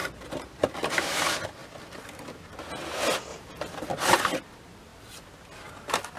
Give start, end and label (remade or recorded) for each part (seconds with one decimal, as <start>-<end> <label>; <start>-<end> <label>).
0.0-0.7 remade; 0.7-1.6 recorded; 1.6-2.3 remade; 2.3-3.3 recorded; 3.3-3.9 remade; 3.9-6.2 recorded